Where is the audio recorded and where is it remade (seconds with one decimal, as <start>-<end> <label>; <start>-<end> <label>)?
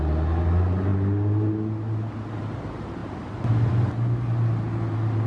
0.0-5.3 recorded